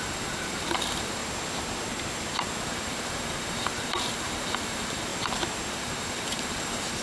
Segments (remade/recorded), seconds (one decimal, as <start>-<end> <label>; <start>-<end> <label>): 0.0-1.2 remade; 1.2-2.6 recorded; 2.6-5.1 remade; 5.1-5.7 recorded; 5.7-7.0 remade